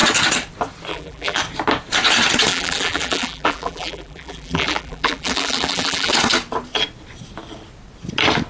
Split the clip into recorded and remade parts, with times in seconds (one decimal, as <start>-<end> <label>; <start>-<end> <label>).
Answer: 0.0-0.9 recorded; 0.9-1.4 remade; 1.4-2.5 recorded; 2.5-6.1 remade; 6.1-8.5 recorded